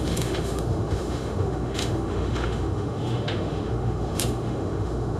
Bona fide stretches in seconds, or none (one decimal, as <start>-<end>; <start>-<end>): none